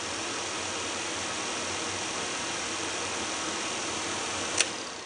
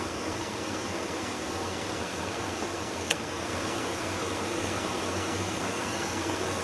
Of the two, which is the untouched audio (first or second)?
first